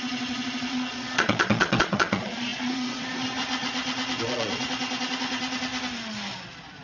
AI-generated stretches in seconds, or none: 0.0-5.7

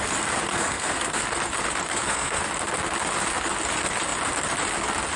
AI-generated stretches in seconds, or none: 0.5-1.2; 1.9-2.4